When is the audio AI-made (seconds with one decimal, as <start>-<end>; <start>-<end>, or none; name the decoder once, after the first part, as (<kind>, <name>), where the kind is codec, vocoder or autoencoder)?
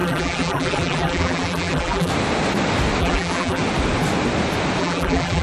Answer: 0.0-2.1 (vocoder, BigVGAN v2); 3.0-3.6; 4.8-5.4